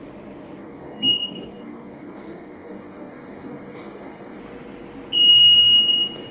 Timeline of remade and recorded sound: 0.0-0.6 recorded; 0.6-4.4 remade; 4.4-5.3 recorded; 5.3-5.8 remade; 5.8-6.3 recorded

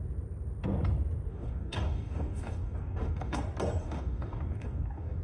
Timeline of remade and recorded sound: 0.0-1.3 recorded; 1.3-3.4 remade; 3.4-3.8 recorded; 3.8-5.2 remade

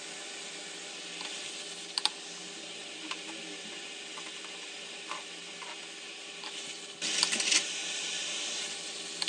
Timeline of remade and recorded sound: 0.0-9.3 recorded

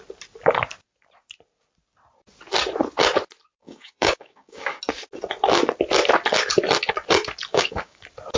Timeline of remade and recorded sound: 0.0-3.6 recorded; 3.6-4.8 remade; 4.8-7.5 recorded; 7.5-8.0 remade; 8.0-8.4 recorded

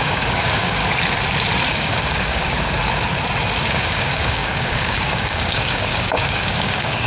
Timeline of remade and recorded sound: 0.0-0.8 remade; 0.8-1.7 recorded; 1.7-2.8 remade; 2.8-3.6 recorded; 3.6-7.1 remade